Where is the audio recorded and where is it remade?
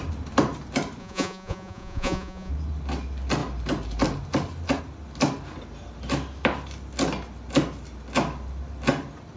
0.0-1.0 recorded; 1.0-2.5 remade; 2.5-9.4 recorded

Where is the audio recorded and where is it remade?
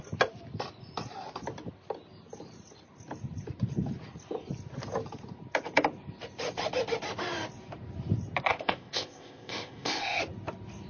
0.0-8.5 recorded; 8.5-10.2 remade; 10.2-10.9 recorded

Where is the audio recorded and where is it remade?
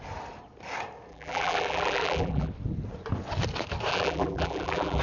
0.0-1.1 recorded; 1.1-2.5 remade; 2.5-3.9 recorded; 3.9-5.0 remade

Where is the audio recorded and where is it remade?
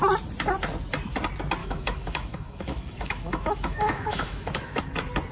0.0-1.6 recorded; 1.6-4.8 remade; 4.8-5.3 recorded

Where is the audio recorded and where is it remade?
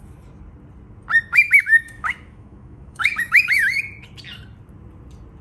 0.0-1.3 recorded; 1.3-3.8 remade; 3.8-5.4 recorded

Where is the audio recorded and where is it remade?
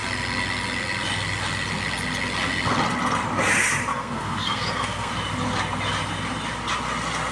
0.0-3.9 recorded; 3.9-5.1 remade; 5.1-7.3 recorded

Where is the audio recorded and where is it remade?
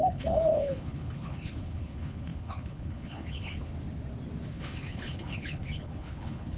0.0-3.7 remade; 3.7-4.5 recorded; 4.5-6.6 remade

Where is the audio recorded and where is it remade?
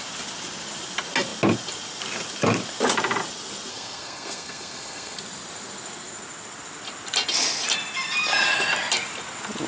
0.0-3.7 recorded; 3.7-5.2 remade; 5.2-9.7 recorded